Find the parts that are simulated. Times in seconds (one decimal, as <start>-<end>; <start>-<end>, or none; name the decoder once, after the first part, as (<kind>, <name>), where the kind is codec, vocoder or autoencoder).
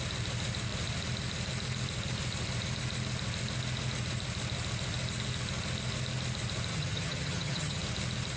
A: 6.7-7.8 (vocoder, HiFi-GAN)